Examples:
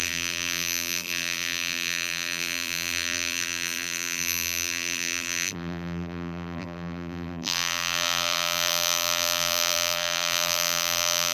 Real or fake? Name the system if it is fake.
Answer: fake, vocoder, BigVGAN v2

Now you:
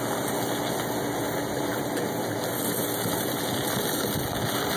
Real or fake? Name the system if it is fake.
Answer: real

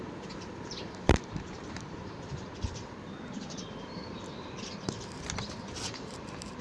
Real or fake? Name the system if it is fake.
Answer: fake, vocoder, BigVGAN v2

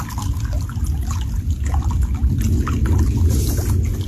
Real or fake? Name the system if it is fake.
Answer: real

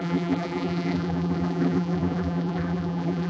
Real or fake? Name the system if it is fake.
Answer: fake, vocoder, BigVGAN v2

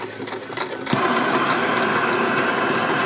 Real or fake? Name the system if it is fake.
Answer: real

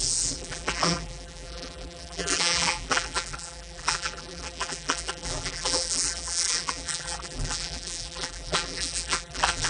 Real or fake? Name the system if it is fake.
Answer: fake, vocoder, BigVGAN v2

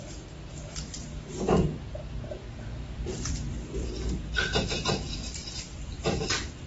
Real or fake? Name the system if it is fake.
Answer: fake, vocoder, BigVGAN v2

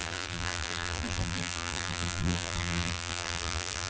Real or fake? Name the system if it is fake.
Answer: fake, vocoder, BigVGAN v2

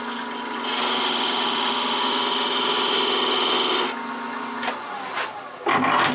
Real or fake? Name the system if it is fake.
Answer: real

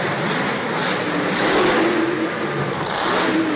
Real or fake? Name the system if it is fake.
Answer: real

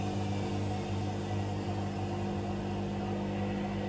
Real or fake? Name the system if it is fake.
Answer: real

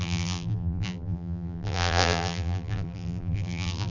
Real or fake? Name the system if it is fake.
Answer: fake, vocoder, BigVGAN v2